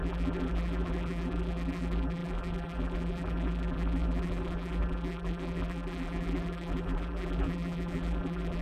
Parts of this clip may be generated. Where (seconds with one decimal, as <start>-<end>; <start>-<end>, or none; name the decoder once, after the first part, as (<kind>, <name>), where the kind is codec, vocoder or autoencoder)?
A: 0.0-8.6 (vocoder, BigVGAN v2)